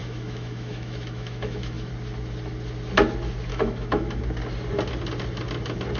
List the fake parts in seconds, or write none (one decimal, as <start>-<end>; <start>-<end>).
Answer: 0.0-1.9; 3.5-4.2